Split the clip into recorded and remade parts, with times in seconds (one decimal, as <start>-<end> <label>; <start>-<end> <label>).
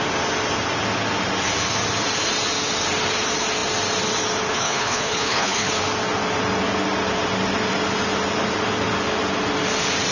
0.0-4.5 recorded; 4.5-5.7 remade; 5.7-10.1 recorded